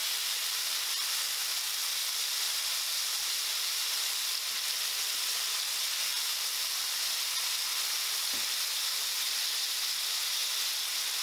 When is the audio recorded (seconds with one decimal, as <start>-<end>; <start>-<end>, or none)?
0.8-2.6; 3.9-6.1; 6.6-11.2